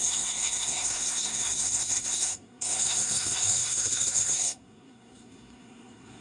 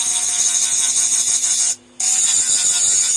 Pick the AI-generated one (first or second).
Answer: first